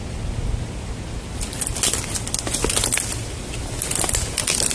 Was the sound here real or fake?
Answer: real